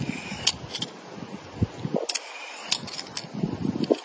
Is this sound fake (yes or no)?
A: no